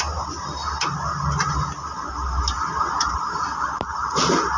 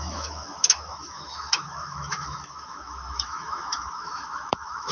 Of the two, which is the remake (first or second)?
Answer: second